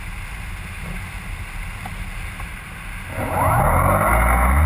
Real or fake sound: real